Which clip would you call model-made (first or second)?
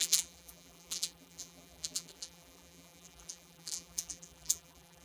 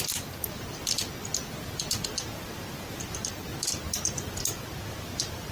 first